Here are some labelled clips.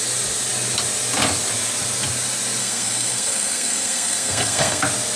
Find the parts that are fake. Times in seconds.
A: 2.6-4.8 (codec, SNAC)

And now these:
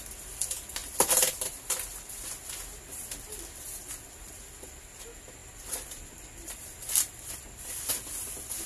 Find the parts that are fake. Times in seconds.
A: 0.8-2.2 (vocoder, BigVGAN v2); 3.8-4.9; 5.4-7.9

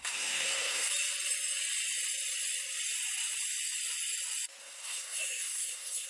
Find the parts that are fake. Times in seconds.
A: 0.0-0.9 (codec, SNAC); 4.6-6.1

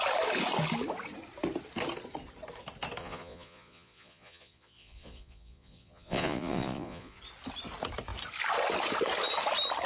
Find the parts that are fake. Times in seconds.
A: 3.0-7.2 (vocoder, Vocos)

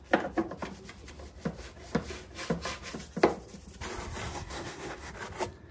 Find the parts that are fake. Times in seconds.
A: 4.3-5.1 (codec, SNAC)

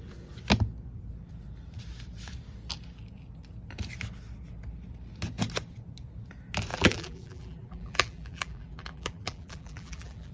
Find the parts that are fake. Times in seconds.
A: 6.7-10.3 (vocoder, BigVGAN v2)

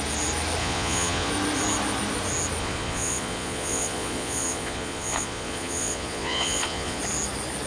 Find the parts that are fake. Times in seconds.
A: 0.6-1.3 (vocoder, Vocos); 2.6-7.0

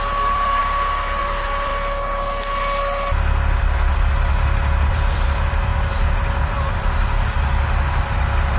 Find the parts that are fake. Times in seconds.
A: 0.0-0.6 (vocoder, BigVGAN v2); 1.2-1.7; 4.9-5.7; 6.8-8.6